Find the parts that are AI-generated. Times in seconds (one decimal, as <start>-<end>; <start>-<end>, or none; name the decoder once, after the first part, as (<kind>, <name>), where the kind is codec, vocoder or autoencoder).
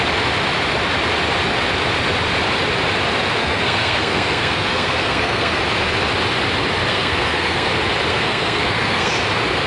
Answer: 3.4-5.6 (codec, SNAC); 6.9-7.7; 8.1-9.1